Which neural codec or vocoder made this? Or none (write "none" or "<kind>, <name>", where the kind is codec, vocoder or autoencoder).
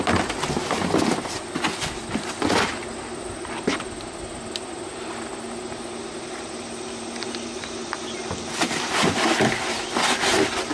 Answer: none